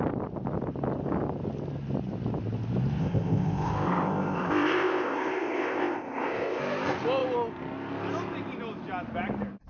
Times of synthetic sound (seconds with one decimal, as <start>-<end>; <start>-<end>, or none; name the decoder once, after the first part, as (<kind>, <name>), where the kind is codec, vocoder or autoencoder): 3.0-6.6 (codec, ZipCodec)